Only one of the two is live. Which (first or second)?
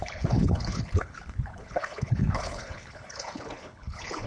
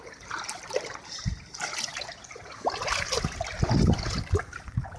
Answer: second